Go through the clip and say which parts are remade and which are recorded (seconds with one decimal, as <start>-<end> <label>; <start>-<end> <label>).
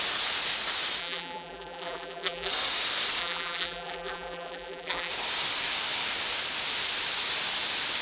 0.0-1.0 recorded; 1.0-2.5 remade; 2.5-3.2 recorded; 3.2-5.1 remade; 5.1-8.0 recorded